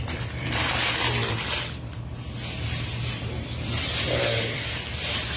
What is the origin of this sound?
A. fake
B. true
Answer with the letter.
B